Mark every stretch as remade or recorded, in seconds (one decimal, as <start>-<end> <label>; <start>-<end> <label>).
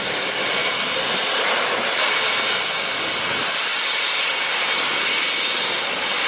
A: 0.0-6.3 recorded